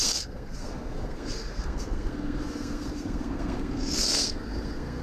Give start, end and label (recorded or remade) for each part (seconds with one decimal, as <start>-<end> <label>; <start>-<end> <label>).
0.0-5.0 remade